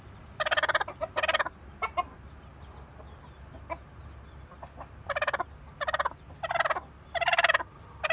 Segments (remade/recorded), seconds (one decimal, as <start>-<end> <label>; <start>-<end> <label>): 0.0-8.1 recorded